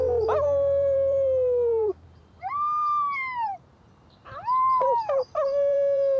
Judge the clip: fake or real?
fake